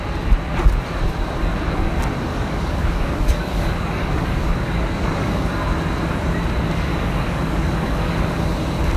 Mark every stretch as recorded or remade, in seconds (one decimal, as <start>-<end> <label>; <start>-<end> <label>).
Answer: 0.0-2.3 recorded; 2.3-5.5 remade; 5.5-6.9 recorded; 6.9-8.2 remade; 8.2-9.0 recorded